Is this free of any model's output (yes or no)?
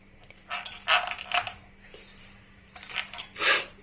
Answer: yes